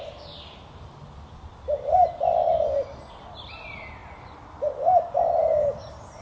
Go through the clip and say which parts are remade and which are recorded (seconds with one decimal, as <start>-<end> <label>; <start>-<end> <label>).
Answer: 0.0-6.2 recorded